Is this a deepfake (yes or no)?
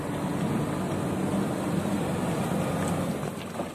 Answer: no